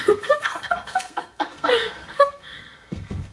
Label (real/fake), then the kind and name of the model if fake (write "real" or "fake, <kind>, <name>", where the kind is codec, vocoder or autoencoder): fake, codec, SNAC